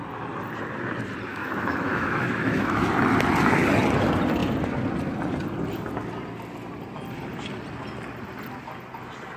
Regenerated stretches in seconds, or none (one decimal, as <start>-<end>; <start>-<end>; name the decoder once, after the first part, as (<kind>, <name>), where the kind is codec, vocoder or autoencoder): 1.3-2.9 (autoencoder, DAC-VAE)